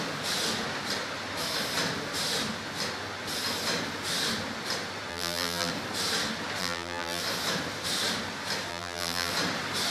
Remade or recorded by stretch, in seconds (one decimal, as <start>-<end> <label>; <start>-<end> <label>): 0.0-5.1 recorded; 5.1-5.7 remade; 5.7-6.6 recorded; 6.6-7.2 remade; 7.2-8.7 recorded; 8.7-9.3 remade; 9.3-9.9 recorded